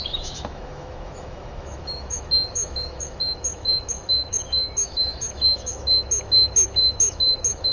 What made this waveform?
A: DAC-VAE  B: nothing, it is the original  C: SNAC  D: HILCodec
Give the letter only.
A